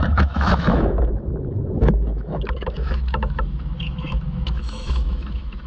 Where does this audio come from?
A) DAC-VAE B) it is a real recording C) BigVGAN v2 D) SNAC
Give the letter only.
A